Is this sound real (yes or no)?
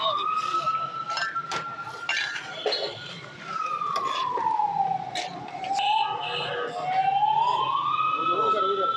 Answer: yes